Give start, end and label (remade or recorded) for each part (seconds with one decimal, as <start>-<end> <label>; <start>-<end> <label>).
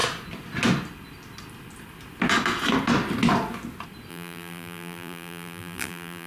0.0-4.1 recorded; 4.1-6.3 remade